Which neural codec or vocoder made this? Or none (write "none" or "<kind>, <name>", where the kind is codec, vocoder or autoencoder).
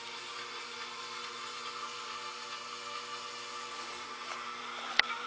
none